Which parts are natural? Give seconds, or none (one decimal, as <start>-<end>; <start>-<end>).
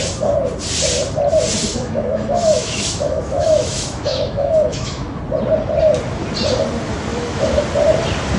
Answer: 0.0-1.7; 5.2-7.1; 7.6-8.4